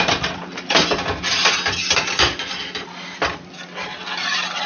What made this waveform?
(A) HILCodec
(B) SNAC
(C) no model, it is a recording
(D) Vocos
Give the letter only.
C